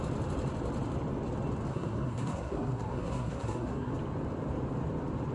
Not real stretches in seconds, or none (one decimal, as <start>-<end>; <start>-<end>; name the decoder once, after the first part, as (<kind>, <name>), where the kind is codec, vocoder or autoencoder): 1.7-3.9 (codec, SNAC)